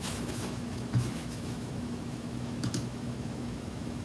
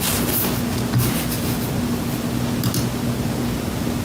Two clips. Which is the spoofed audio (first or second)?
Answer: first